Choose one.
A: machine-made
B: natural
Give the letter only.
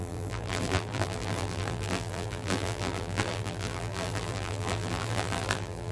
A